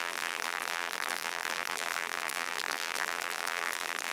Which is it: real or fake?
fake